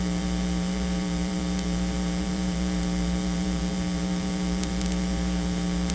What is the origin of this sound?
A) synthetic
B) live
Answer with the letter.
A